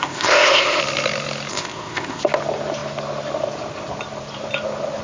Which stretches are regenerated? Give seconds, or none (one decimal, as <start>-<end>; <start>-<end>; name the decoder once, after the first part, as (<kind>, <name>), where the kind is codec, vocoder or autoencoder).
0.0-0.8 (codec, ZipCodec); 1.5-2.2